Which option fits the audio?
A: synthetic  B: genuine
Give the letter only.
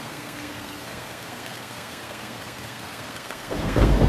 A